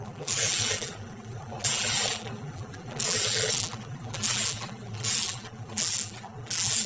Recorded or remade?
remade